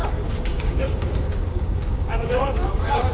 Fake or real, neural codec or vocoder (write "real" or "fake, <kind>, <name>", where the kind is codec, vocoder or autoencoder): fake, codec, DAC